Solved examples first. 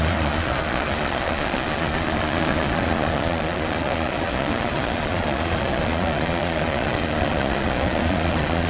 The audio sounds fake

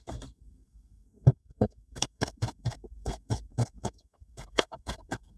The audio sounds fake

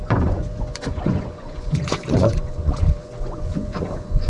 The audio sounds fake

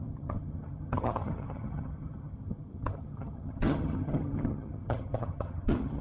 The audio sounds fake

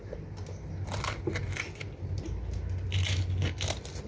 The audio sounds real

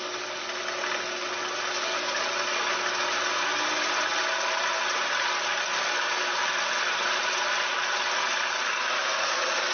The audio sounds real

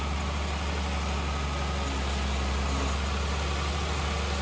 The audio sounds real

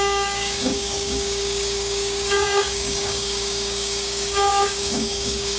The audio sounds fake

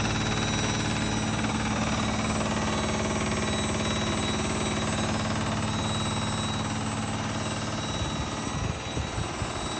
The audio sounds real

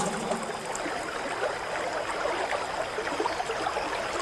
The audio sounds real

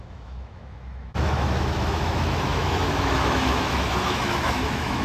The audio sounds fake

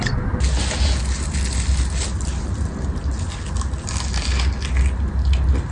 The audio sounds real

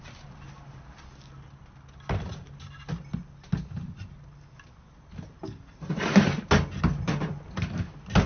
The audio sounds real